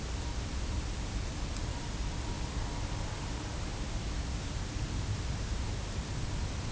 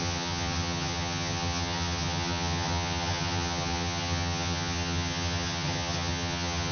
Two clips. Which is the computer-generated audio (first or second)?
second